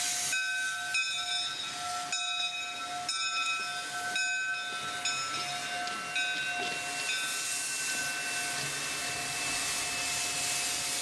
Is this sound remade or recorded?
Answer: recorded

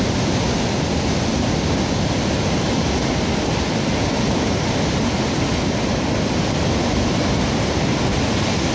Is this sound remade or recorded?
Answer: recorded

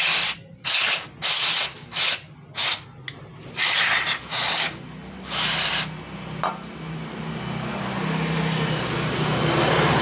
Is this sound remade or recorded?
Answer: recorded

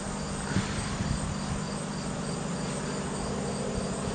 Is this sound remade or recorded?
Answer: recorded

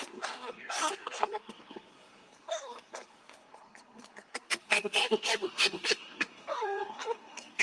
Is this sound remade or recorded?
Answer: remade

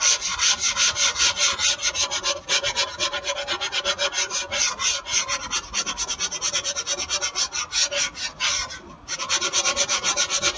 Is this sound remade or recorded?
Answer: recorded